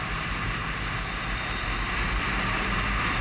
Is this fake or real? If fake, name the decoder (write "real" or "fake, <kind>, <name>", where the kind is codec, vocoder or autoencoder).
real